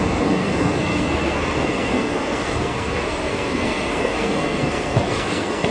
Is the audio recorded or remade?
remade